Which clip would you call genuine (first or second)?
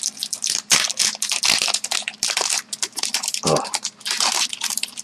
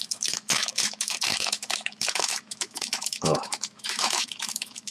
first